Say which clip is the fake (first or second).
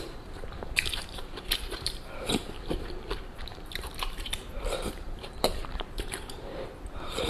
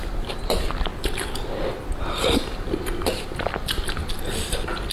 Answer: first